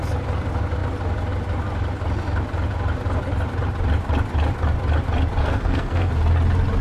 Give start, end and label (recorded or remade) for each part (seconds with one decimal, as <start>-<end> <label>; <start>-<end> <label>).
0.0-5.4 recorded; 5.4-6.1 remade; 6.1-6.8 recorded